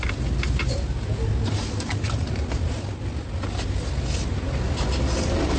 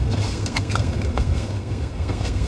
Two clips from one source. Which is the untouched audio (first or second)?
first